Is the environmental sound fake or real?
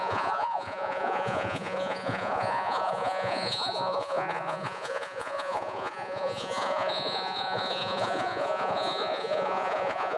fake